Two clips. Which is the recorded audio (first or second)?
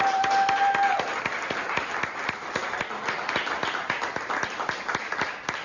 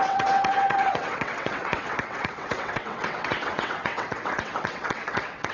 first